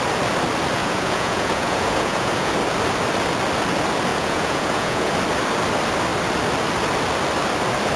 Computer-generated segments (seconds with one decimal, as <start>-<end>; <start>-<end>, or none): 0.8-2.5; 4.1-5.1

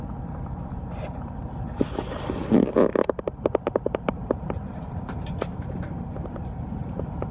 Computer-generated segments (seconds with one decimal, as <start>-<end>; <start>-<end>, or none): 2.9-7.3

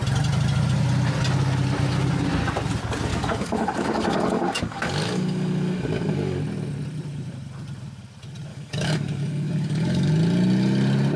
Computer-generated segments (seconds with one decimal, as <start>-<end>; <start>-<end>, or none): 3.1-6.4; 8.5-10.1

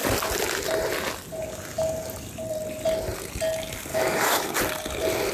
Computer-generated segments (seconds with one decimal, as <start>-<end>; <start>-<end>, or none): 3.9-4.6